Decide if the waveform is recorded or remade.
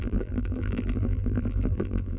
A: remade